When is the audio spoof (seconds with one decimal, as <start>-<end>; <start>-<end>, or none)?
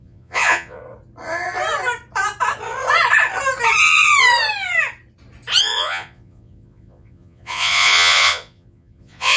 0.0-0.8; 5.6-9.4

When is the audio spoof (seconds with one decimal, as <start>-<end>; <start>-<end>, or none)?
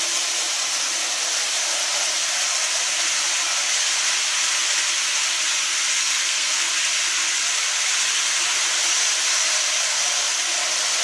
6.0-6.7